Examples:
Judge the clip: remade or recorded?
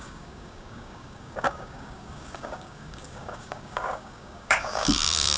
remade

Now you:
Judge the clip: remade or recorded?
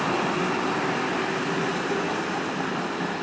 recorded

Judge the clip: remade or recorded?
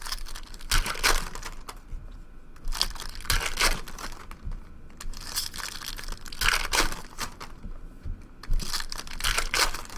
recorded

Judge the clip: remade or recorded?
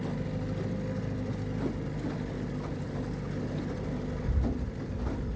recorded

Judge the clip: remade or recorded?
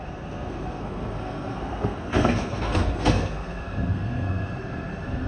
remade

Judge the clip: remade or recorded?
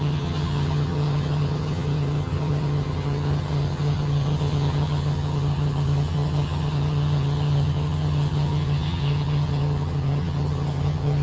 remade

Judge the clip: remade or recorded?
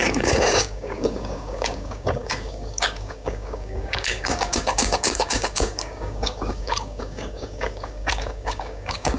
remade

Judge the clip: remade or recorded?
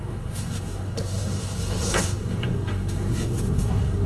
remade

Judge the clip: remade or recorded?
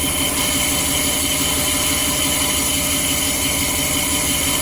recorded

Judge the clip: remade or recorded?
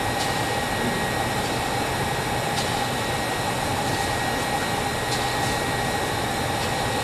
recorded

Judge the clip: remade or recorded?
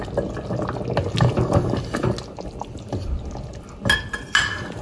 recorded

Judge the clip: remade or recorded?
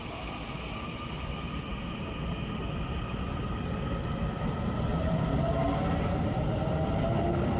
recorded